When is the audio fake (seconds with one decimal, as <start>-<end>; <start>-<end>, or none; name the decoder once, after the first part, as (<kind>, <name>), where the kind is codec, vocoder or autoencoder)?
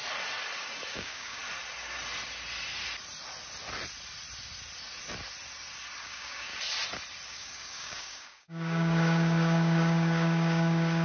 0.9-1.4 (codec, DAC); 6.0-6.5; 7.3-11.0